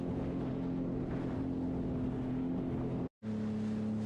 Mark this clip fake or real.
real